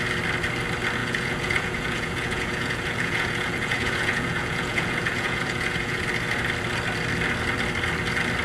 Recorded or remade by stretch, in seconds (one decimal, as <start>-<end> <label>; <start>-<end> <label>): 0.0-1.0 recorded; 1.0-6.0 remade; 6.0-8.4 recorded